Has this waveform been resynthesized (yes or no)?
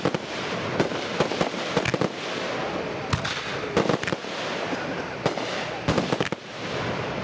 no